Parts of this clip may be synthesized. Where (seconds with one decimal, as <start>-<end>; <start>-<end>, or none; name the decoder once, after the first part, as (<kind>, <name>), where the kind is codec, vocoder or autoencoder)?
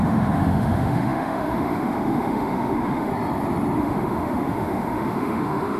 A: 0.0-3.1 (autoencoder, DAC-VAE); 3.8-5.8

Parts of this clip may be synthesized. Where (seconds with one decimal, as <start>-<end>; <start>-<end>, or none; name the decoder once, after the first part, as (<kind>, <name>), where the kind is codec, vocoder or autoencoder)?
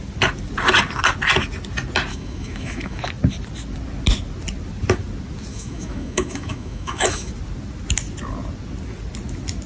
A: 2.1-3.0 (autoencoder, DAC-VAE); 5.5-7.3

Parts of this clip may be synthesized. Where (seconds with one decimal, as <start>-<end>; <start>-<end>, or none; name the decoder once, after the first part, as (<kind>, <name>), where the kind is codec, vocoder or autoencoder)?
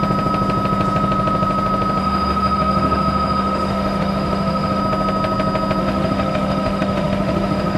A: 2.0-4.8 (autoencoder, DAC-VAE); 5.8-7.8